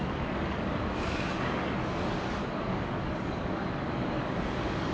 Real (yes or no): no